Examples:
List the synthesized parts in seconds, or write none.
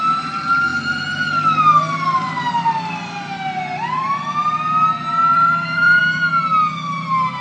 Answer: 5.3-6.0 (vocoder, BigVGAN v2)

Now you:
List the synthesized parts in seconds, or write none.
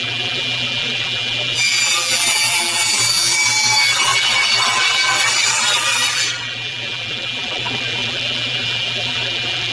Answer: 0.0-9.7 (vocoder, BigVGAN v2)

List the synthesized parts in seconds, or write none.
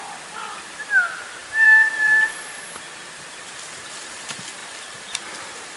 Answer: 1.4-2.6 (vocoder, BigVGAN v2); 4.6-5.2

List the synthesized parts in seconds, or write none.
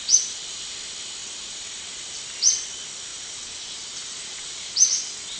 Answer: 1.2-1.8 (vocoder, BigVGAN v2); 3.1-4.7